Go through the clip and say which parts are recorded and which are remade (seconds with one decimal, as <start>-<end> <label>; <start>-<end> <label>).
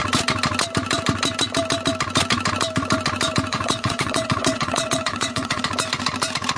0.0-3.5 recorded; 3.5-5.6 remade; 5.6-6.6 recorded